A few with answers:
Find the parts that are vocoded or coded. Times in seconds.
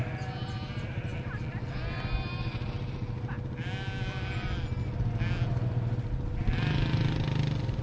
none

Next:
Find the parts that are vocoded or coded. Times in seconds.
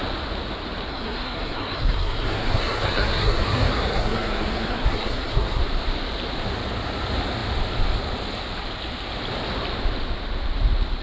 0.9-5.6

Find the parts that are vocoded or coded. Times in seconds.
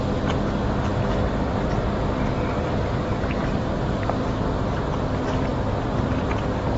none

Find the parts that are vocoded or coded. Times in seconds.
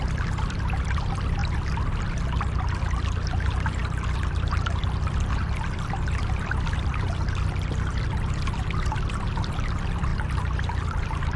0.0-1.4; 2.1-10.1; 11.0-11.4